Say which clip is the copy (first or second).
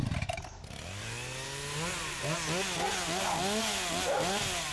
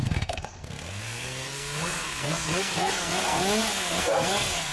second